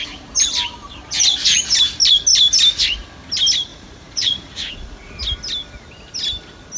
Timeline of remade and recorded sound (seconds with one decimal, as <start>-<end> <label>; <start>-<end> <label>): 0.0-3.7 recorded; 3.7-5.2 remade; 5.2-6.8 recorded